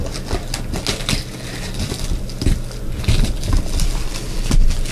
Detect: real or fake real